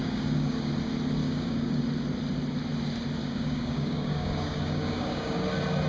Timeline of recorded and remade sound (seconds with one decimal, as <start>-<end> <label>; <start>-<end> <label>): 0.0-0.7 remade; 0.7-1.2 recorded; 1.2-1.8 remade; 1.8-3.2 recorded; 3.2-5.5 remade; 5.5-5.9 recorded